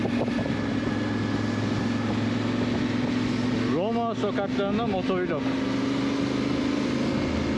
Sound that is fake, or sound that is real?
real